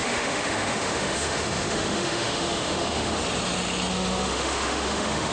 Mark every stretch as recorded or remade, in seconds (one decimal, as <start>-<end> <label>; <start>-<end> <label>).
0.0-3.2 remade; 3.2-3.9 recorded; 3.9-5.3 remade

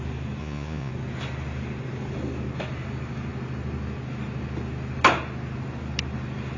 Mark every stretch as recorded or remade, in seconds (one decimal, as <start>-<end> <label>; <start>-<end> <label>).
0.0-0.4 recorded; 0.4-0.9 remade; 0.9-6.6 recorded

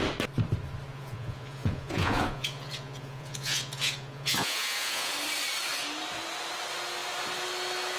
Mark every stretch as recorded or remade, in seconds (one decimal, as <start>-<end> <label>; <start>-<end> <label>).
0.0-0.9 recorded; 0.9-5.1 remade; 5.1-8.0 recorded

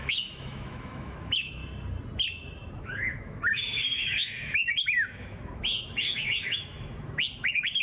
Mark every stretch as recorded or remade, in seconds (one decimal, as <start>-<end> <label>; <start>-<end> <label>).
0.0-1.6 remade; 1.6-2.7 recorded; 2.7-7.8 remade

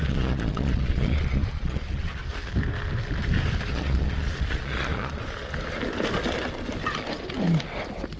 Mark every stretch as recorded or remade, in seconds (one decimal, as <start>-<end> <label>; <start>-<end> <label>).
0.0-2.2 remade; 2.2-3.7 recorded; 3.7-5.2 remade; 5.2-8.2 recorded

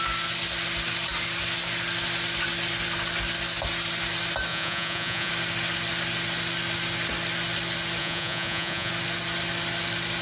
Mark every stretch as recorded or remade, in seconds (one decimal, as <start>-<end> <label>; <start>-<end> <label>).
0.0-4.5 recorded; 4.5-5.3 remade; 5.3-8.0 recorded; 8.0-8.9 remade; 8.9-10.2 recorded